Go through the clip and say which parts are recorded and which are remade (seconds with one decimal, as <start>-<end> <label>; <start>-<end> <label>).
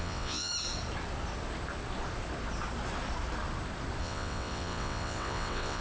0.0-0.5 remade; 0.5-4.0 recorded; 4.0-5.8 remade